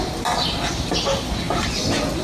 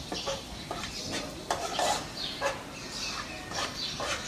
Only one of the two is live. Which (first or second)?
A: first